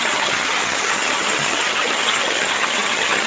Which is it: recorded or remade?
remade